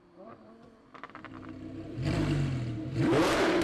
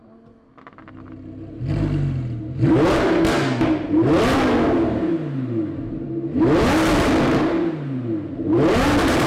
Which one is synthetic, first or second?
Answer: first